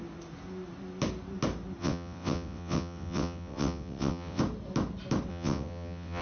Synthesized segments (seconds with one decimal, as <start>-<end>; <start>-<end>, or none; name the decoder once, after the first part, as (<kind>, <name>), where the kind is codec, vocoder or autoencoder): 1.8-4.4 (vocoder, WaveNeXt); 5.3-6.2